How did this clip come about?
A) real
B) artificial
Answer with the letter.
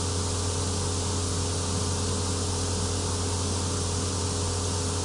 A